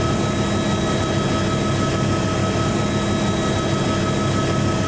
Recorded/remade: recorded